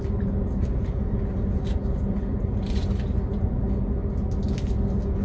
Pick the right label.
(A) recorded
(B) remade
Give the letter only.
A